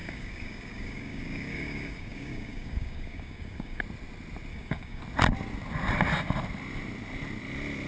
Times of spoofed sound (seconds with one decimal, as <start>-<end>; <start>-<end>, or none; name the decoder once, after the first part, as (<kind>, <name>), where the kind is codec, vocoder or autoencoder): 0.0-3.8 (codec, DAC); 4.5-5.0